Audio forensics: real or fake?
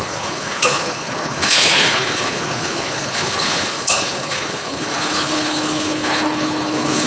fake